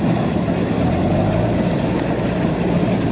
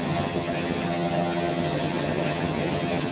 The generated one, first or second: second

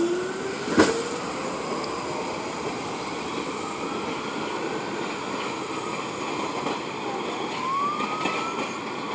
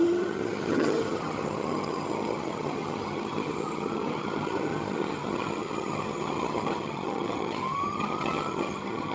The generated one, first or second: second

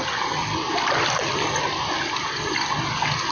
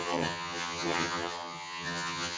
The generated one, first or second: second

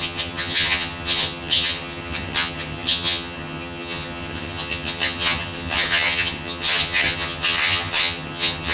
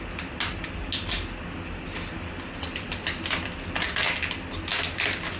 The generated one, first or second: first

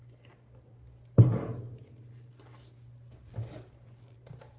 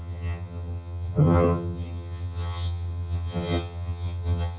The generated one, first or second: second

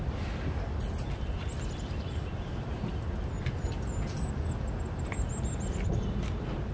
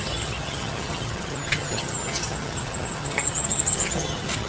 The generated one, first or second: second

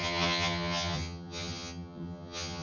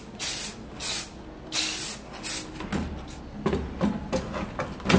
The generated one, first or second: first